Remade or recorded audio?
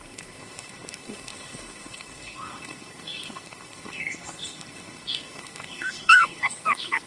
remade